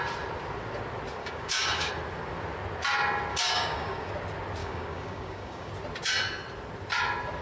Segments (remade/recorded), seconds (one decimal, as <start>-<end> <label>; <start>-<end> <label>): 0.0-1.2 recorded; 1.2-1.9 remade; 1.9-3.3 recorded; 3.3-4.1 remade; 4.1-4.6 recorded; 4.6-5.7 remade; 5.7-7.4 recorded